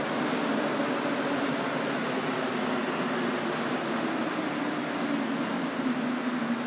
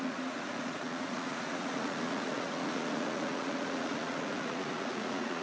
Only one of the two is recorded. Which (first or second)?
first